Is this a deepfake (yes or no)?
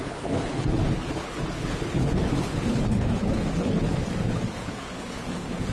yes